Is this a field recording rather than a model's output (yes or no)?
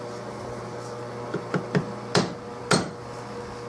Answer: yes